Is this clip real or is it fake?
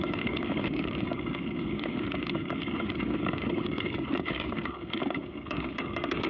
fake